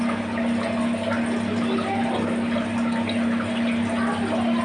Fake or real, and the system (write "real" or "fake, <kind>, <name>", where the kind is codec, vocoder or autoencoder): real